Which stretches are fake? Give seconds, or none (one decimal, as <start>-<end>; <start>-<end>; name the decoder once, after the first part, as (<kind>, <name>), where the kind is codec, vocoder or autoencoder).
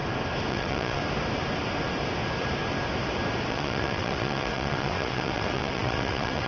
0.5-1.0 (vocoder, WaveNeXt); 3.5-6.5